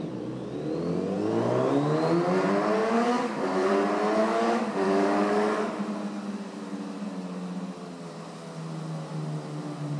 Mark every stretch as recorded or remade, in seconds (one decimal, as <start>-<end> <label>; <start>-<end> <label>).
0.0-2.8 recorded; 2.8-3.7 remade; 3.7-4.2 recorded; 4.2-5.8 remade; 5.8-10.0 recorded